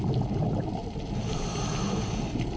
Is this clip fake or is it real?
real